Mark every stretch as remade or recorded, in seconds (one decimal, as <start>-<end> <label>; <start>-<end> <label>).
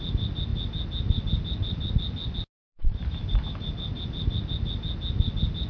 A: 0.0-5.7 recorded